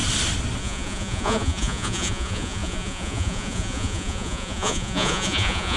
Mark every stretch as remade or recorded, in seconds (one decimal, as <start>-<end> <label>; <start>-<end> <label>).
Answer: 0.0-0.6 recorded; 0.6-5.8 remade